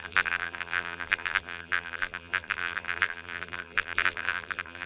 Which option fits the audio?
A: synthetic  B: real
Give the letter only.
A